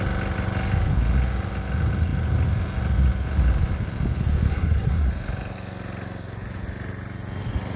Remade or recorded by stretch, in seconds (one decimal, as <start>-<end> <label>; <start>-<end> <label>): 0.0-4.5 recorded; 4.5-5.1 remade; 5.1-7.8 recorded